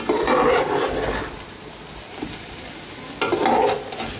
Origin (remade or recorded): recorded